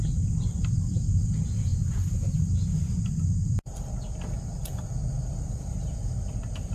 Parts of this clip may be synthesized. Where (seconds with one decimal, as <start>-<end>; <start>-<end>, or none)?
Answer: none